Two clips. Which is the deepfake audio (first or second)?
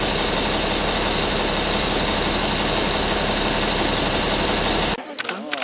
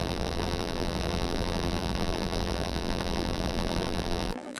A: second